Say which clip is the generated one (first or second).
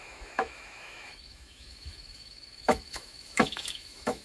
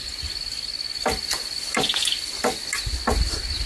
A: first